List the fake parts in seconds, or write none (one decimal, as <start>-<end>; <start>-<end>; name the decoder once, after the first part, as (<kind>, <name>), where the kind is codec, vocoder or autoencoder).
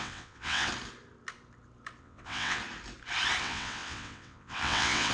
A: 0.0-0.7 (vocoder, WaveNeXt); 2.0-2.6; 3.4-5.1